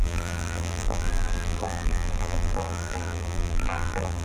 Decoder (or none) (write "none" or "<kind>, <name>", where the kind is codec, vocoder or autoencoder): vocoder, BigVGAN v2